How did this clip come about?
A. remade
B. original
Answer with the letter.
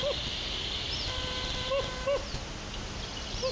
B